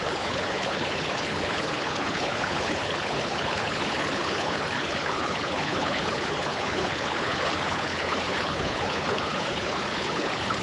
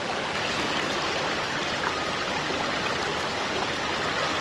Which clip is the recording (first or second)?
second